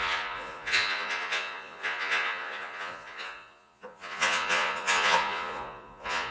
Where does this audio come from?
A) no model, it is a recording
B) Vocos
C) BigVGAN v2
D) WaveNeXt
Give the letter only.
B